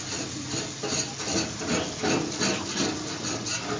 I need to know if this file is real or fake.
real